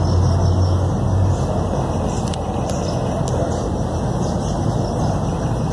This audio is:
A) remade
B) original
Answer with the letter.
B